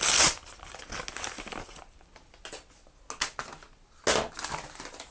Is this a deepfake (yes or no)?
no